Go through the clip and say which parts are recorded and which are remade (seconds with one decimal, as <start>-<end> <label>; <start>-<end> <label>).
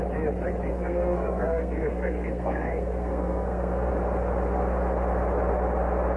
0.0-0.7 recorded; 0.7-3.9 remade; 3.9-6.2 recorded